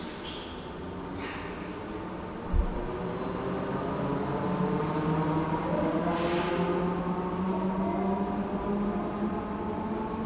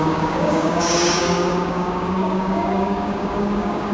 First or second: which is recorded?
first